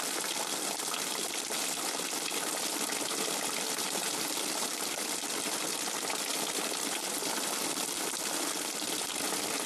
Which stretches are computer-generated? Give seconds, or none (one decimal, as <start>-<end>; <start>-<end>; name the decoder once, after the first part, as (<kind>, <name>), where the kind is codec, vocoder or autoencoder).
none

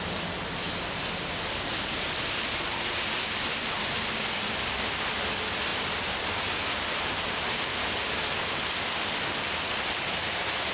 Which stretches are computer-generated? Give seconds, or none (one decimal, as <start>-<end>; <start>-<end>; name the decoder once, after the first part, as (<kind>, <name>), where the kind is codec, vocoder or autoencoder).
5.7-7.6 (vocoder, BigVGAN v2)

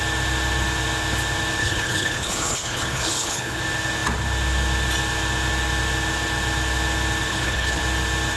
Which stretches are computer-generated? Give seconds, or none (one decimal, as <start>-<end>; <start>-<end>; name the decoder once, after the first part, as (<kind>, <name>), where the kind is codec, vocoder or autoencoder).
1.6-3.6 (codec, HILCodec); 7.3-7.8

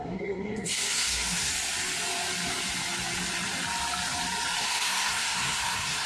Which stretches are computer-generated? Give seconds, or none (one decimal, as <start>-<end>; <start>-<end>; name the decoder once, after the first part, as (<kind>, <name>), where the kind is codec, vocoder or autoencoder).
0.0-1.5 (codec, SNAC); 4.6-6.1

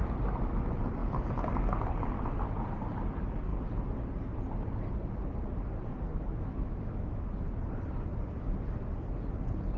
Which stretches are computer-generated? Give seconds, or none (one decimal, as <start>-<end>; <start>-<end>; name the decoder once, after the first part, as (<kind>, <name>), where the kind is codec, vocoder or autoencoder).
6.1-7.2 (autoencoder, DAC-VAE)